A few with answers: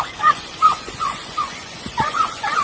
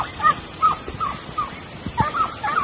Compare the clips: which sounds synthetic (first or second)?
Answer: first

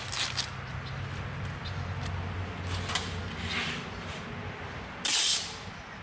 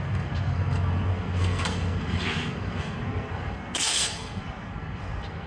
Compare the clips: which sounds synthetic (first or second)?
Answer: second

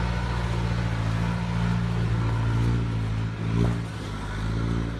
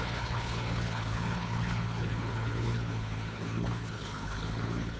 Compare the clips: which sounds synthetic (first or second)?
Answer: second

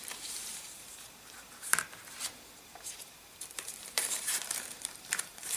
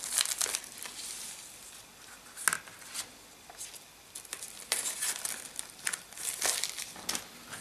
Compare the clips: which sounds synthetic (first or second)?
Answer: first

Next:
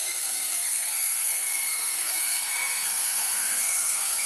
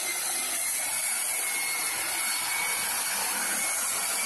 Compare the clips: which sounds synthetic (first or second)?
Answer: first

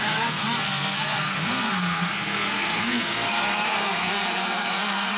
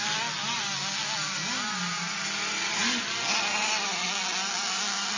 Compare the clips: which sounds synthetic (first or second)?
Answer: first